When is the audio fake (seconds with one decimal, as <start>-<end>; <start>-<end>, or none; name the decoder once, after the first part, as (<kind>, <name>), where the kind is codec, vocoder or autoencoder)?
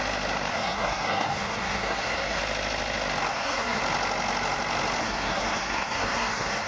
0.5-2.4 (codec, SNAC); 3.3-3.8; 5.0-6.7